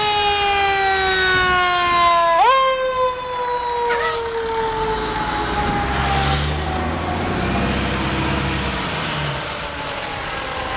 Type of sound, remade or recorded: recorded